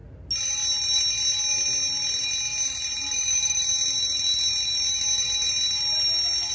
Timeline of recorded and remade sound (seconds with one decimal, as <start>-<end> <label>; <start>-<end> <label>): 0.0-6.5 recorded